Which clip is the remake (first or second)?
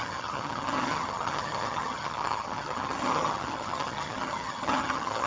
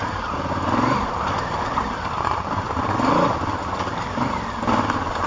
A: first